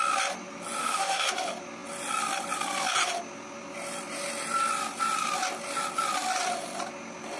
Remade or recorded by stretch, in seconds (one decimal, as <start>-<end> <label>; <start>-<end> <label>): 0.0-0.8 recorded; 0.8-1.3 remade; 1.3-7.4 recorded